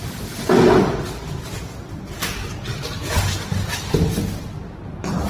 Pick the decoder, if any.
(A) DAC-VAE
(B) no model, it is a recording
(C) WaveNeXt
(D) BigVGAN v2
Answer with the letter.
B